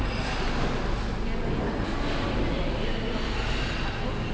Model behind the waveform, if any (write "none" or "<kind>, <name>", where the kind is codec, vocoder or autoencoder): none